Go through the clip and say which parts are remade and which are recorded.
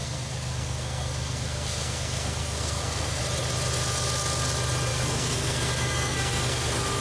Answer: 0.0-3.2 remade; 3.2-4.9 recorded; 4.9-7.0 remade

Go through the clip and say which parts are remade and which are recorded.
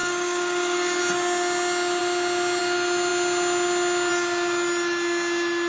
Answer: 0.0-1.0 remade; 1.0-5.7 recorded